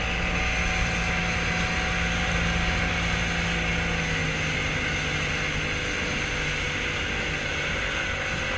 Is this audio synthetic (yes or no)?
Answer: no